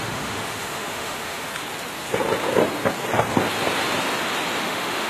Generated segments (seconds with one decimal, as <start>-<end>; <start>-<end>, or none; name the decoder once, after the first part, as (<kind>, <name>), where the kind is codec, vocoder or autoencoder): 0.0-1.5 (autoencoder, DAC-VAE); 4.6-5.1